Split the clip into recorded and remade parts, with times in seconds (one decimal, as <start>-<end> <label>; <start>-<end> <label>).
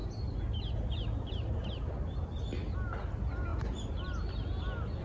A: 0.0-5.0 recorded